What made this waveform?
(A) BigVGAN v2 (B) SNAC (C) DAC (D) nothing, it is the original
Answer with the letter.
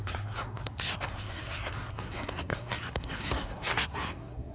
B